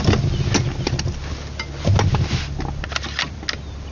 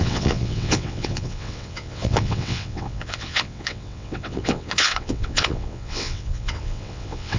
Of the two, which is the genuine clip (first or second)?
first